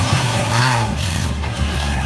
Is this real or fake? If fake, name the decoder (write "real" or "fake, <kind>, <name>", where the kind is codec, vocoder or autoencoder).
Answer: fake, codec, SNAC